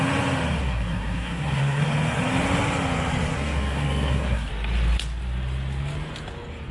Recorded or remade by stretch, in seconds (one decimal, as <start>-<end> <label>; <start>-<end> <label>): 0.0-0.6 recorded; 0.6-1.8 remade; 1.8-3.3 recorded; 3.3-4.5 remade; 4.5-6.7 recorded